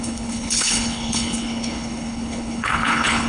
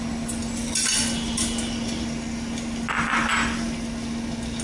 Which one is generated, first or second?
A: first